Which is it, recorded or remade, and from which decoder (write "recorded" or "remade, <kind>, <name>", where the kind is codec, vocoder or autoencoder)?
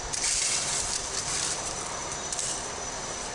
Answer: remade, vocoder, BigVGAN v2